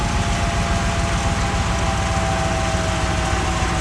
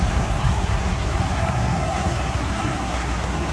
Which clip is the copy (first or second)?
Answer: second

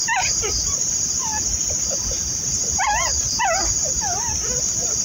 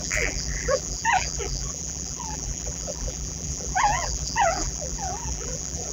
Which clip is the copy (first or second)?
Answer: second